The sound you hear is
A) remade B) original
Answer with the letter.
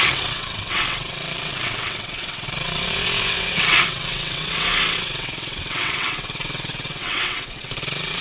A